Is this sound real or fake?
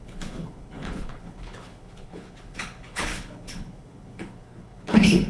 fake